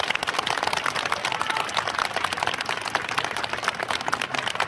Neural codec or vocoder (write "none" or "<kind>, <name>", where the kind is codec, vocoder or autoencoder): none